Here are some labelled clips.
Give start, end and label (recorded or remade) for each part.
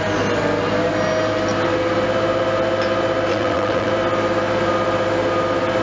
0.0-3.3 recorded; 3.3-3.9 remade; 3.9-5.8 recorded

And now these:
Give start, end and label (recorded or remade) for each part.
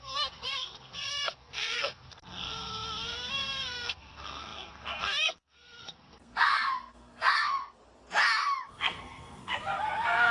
0.0-7.8 remade; 7.8-8.7 recorded; 8.7-10.3 remade